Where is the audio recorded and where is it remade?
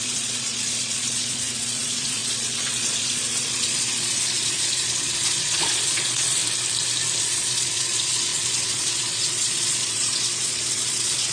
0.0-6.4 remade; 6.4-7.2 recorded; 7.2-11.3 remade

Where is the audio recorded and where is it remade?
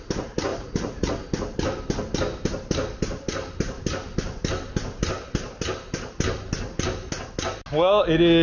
0.0-0.5 recorded; 0.5-1.1 remade; 1.1-8.4 recorded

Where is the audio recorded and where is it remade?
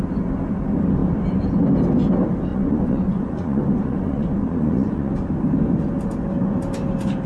0.0-2.5 recorded; 2.5-5.1 remade; 5.1-7.3 recorded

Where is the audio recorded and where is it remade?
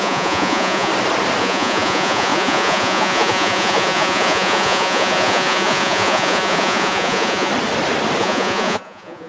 0.0-0.9 remade; 0.9-1.4 recorded; 1.4-7.5 remade; 7.5-8.2 recorded; 8.2-9.3 remade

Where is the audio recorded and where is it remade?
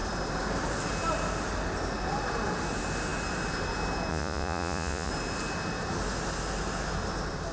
0.0-4.1 recorded; 4.1-5.1 remade; 5.1-7.5 recorded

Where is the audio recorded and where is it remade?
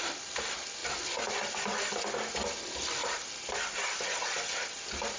0.0-5.2 recorded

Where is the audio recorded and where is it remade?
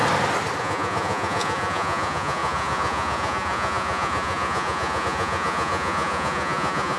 0.0-0.6 recorded; 0.6-7.0 remade